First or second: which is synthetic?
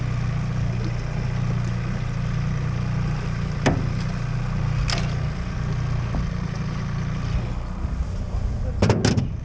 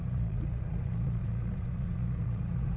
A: second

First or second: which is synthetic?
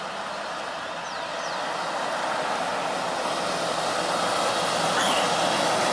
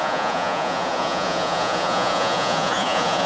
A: second